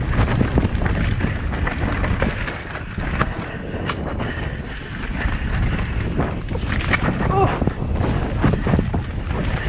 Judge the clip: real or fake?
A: real